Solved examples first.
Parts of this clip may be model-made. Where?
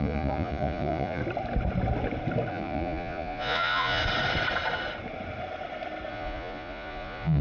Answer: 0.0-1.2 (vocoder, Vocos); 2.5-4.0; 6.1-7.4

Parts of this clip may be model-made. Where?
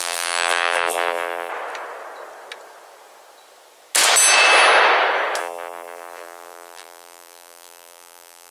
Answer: 0.0-1.5 (vocoder, BigVGAN v2); 5.4-8.5